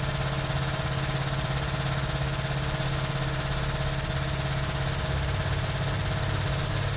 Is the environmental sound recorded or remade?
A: recorded